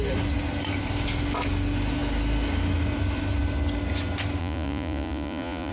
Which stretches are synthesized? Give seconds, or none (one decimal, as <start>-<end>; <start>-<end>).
4.4-5.7